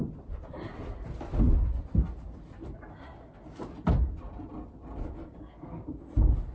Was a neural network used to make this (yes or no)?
no